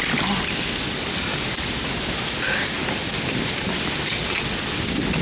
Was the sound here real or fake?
real